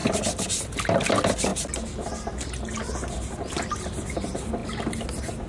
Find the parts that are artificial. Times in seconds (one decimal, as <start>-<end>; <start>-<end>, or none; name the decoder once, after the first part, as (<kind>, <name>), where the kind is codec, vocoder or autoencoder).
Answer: none